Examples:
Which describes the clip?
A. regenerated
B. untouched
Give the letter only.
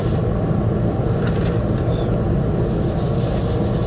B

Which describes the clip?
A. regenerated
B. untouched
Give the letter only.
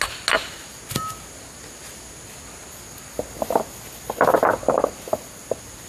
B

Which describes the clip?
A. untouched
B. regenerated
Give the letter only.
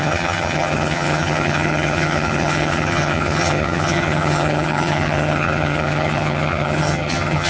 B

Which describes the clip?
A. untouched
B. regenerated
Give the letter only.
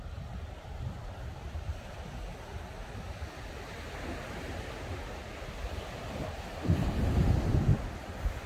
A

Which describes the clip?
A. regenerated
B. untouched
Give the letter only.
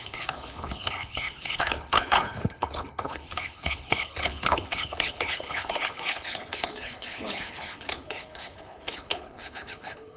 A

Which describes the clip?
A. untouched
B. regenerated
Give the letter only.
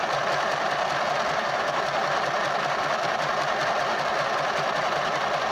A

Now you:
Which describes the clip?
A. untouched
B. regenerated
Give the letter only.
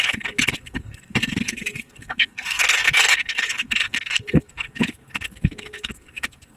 B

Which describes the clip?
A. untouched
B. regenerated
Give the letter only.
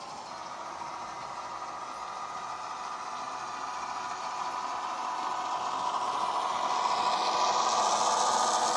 A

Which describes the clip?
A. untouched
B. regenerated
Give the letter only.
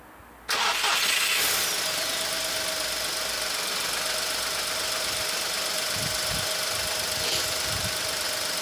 A